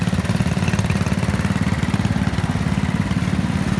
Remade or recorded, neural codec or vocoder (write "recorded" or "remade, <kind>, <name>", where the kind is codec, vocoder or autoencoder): recorded